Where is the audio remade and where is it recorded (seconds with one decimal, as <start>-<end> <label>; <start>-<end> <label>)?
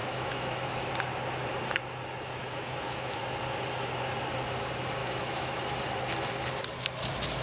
0.0-0.9 remade; 0.9-2.4 recorded; 2.4-3.2 remade; 3.2-5.0 recorded; 5.0-5.6 remade; 5.6-7.4 recorded